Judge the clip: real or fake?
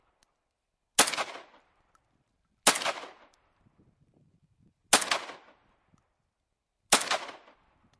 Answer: real